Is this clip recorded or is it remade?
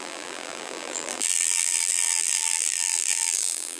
remade